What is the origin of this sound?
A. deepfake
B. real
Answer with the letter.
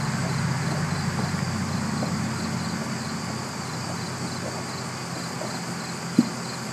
B